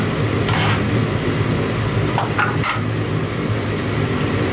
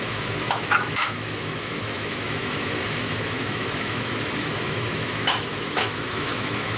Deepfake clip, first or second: second